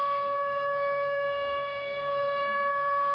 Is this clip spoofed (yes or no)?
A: yes